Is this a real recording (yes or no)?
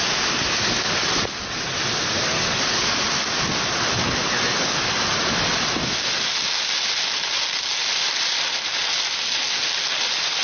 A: yes